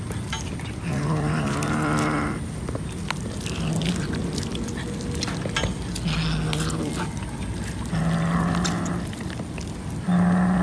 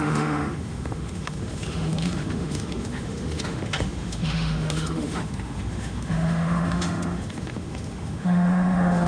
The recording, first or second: first